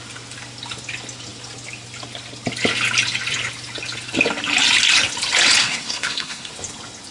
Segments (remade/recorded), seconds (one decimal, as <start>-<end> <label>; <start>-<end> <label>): 0.0-5.6 recorded; 5.6-6.5 remade; 6.5-7.1 recorded